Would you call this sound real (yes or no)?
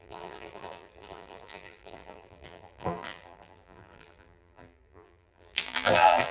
no